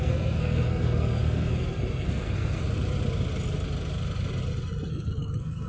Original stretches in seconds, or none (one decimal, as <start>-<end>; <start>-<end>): 2.6-4.9